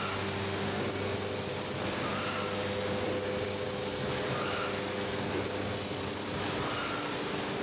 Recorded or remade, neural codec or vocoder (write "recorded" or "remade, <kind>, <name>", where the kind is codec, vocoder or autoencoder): recorded